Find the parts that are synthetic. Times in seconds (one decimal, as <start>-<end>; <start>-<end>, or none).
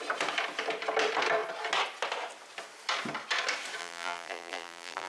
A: 3.8-5.1